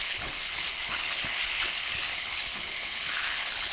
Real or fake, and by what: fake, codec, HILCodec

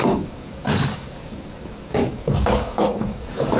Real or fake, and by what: fake, codec, DAC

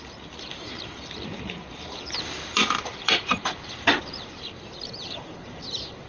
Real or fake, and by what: fake, vocoder, BigVGAN v2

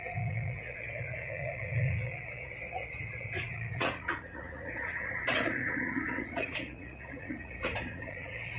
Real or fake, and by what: fake, vocoder, Vocos